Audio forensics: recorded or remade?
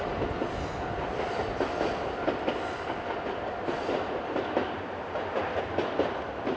recorded